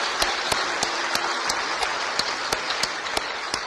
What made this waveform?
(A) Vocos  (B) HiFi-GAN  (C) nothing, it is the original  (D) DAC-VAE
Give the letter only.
C